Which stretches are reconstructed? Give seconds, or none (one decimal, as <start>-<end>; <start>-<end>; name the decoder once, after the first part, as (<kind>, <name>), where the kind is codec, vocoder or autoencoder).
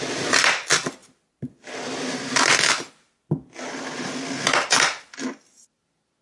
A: none